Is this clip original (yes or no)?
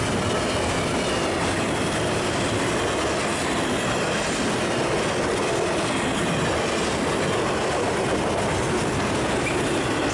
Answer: yes